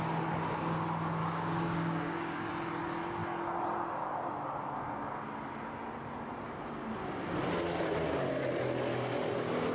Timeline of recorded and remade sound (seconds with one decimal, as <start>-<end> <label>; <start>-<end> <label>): 0.0-1.2 recorded; 1.2-2.5 remade; 2.5-9.7 recorded